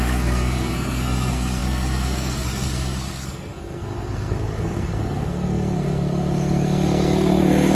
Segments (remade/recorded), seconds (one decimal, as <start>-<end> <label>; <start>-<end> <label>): 0.0-7.7 remade